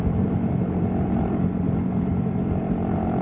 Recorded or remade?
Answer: remade